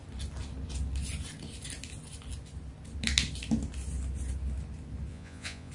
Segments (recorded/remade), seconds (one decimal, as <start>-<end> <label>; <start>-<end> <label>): 0.0-5.1 recorded; 5.1-5.7 remade